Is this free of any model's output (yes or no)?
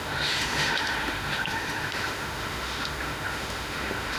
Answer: no